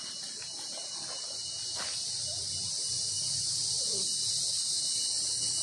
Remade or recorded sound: recorded